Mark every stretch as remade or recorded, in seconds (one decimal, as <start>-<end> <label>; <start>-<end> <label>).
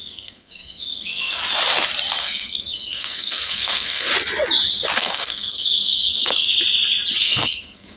0.0-1.4 remade; 1.4-2.2 recorded; 2.2-4.1 remade; 4.1-5.0 recorded; 5.0-6.5 remade; 6.5-7.2 recorded; 7.2-8.0 remade